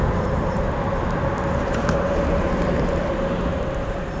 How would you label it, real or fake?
real